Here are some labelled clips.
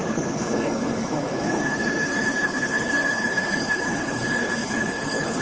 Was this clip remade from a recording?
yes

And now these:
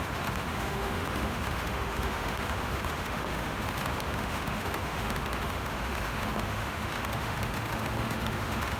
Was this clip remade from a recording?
yes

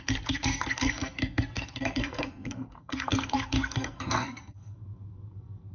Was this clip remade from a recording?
yes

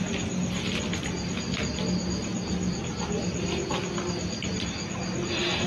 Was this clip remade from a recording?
no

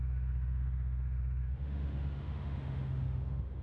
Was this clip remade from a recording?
yes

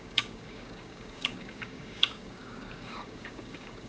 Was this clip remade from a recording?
yes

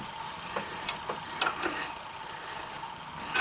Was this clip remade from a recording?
no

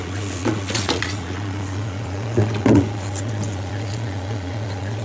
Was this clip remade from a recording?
yes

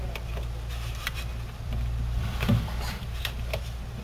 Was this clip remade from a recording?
yes